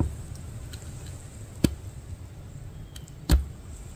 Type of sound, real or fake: real